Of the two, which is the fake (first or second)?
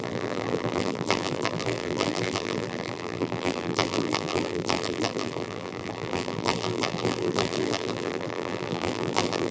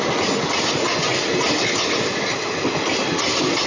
first